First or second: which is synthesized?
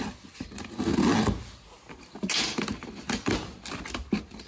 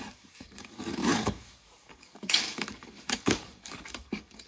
second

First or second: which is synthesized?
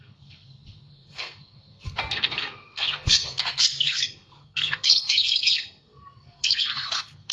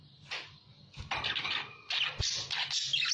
first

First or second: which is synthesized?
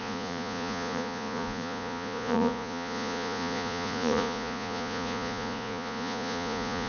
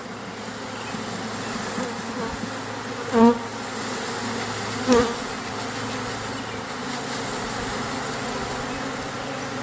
first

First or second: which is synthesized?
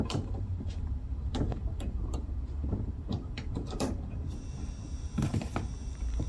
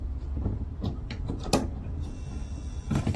first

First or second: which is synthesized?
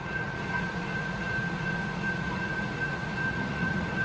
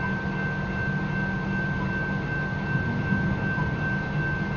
first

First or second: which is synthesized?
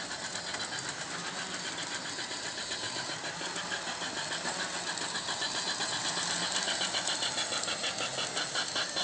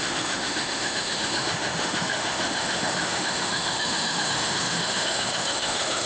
second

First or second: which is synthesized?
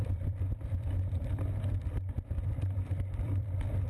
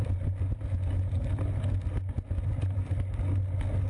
first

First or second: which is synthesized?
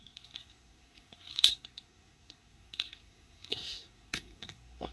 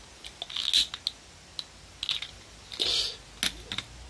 first